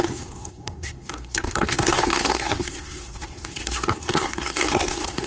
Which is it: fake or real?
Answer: fake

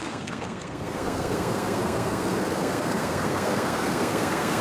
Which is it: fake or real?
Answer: fake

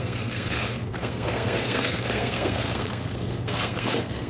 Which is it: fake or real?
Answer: fake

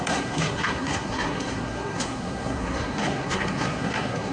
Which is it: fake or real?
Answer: fake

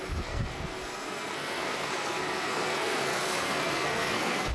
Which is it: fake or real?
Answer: fake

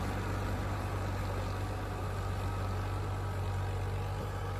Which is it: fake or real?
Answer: real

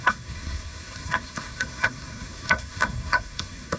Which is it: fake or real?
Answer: fake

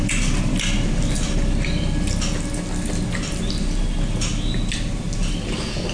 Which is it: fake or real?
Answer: real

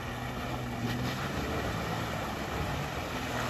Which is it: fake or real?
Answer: real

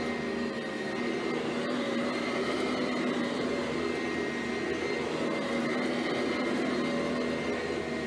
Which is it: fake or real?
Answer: real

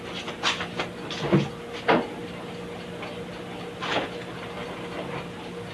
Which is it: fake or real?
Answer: real